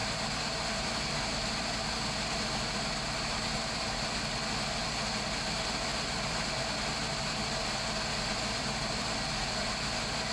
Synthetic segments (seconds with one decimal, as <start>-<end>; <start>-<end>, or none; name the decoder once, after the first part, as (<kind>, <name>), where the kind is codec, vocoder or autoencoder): none